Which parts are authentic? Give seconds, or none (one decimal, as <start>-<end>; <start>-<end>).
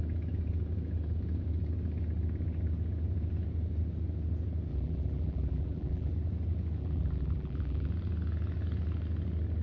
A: 0.0-4.7; 6.1-6.8; 7.9-9.6